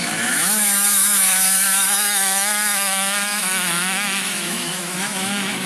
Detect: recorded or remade remade